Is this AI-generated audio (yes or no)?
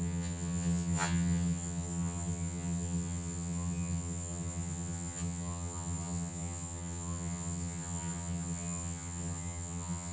yes